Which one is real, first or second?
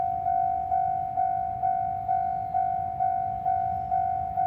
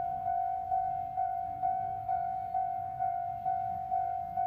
first